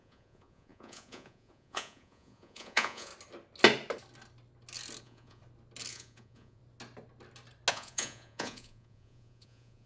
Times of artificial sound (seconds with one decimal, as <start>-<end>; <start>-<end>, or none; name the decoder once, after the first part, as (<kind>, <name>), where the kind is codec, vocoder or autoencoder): 0.0-3.1 (vocoder, Vocos); 5.0-5.4; 5.9-6.6; 7.7-9.9